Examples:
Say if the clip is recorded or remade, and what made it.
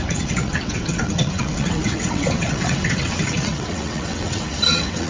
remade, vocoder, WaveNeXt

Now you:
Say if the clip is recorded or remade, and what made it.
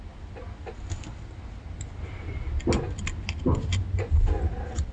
recorded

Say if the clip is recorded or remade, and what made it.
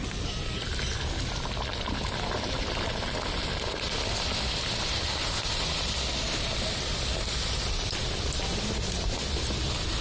recorded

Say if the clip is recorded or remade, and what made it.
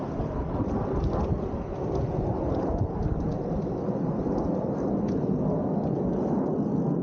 recorded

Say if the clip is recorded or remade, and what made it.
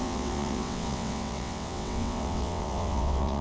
remade, vocoder, WaveNeXt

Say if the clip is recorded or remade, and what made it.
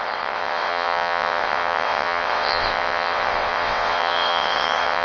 remade, vocoder, WaveNeXt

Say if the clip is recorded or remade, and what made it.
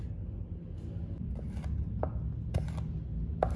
recorded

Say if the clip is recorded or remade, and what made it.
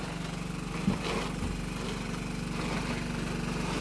recorded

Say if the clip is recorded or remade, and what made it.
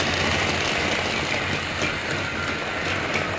recorded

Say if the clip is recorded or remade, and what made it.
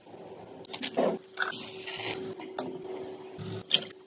recorded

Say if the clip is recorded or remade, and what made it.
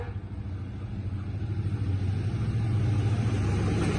recorded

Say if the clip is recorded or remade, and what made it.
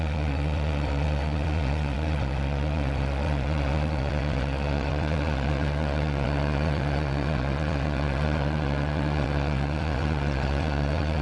remade, vocoder, WaveNeXt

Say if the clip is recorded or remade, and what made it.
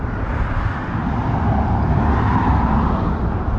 recorded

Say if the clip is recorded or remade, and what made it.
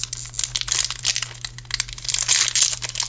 recorded